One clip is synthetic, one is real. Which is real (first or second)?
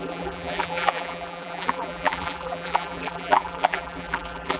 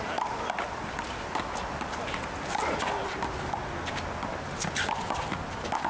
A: second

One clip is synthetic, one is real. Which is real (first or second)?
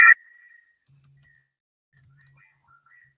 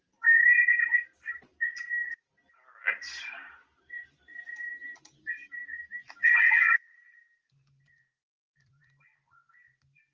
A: first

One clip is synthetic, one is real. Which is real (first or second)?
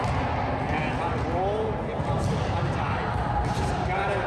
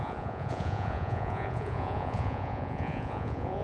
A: first